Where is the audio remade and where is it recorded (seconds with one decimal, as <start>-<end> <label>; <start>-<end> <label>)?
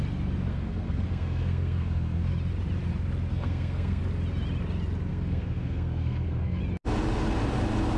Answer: 0.0-0.5 recorded; 0.5-2.3 remade; 2.3-3.3 recorded; 3.3-4.0 remade; 4.0-5.1 recorded; 5.1-6.6 remade; 6.6-8.0 recorded